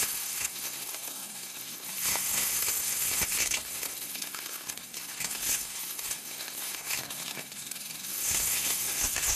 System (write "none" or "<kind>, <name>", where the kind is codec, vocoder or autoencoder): codec, SNAC